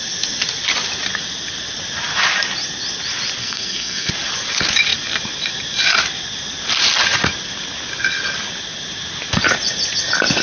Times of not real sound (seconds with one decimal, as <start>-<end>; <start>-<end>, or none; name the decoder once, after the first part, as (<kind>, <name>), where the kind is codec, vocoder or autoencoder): 3.4-4.1 (codec, SNAC)

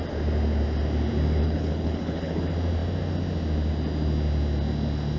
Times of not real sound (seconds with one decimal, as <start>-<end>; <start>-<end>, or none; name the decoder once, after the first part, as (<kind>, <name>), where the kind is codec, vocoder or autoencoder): 1.4-2.4 (codec, HILCodec)

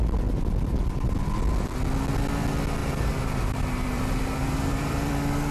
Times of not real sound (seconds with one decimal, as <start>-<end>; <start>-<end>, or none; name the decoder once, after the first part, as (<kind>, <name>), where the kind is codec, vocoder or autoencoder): 2.8-5.1 (vocoder, BigVGAN v2)

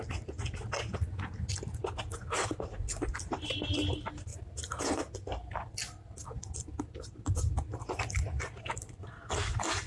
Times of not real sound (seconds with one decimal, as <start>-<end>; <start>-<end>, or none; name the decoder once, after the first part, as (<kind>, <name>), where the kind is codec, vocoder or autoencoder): none

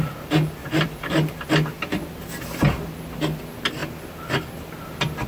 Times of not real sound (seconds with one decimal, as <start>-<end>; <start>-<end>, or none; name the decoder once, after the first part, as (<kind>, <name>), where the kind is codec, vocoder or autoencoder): 0.6-1.1 (vocoder, BigVGAN v2)